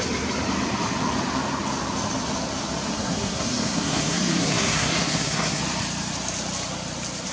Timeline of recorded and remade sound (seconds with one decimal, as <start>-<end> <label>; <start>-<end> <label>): 0.0-2.9 recorded; 2.9-5.6 remade; 5.6-7.3 recorded